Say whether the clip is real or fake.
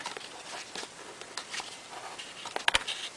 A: real